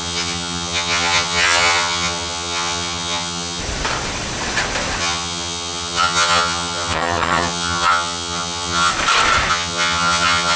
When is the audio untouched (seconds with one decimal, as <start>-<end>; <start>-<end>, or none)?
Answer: 3.6-5.0; 8.9-9.5

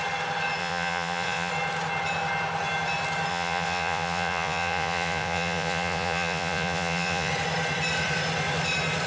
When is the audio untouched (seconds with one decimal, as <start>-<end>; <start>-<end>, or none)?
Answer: 0.0-0.6; 1.5-3.3; 7.3-9.1